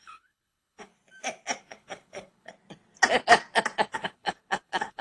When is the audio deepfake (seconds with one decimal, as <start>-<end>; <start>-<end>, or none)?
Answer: 0.0-0.9; 1.6-2.5; 3.9-5.0